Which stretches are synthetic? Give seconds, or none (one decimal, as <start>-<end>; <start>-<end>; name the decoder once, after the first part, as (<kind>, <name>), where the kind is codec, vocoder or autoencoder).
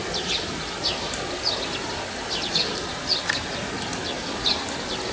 none